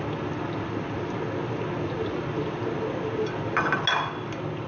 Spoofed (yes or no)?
no